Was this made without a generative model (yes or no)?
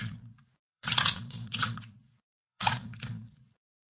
no